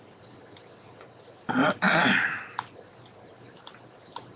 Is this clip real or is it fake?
real